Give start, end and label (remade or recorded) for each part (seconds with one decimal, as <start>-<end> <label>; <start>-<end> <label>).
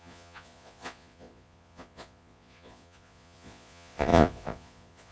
0.0-5.1 remade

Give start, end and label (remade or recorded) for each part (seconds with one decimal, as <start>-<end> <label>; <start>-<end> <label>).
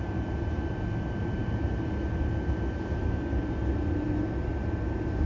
0.0-5.3 recorded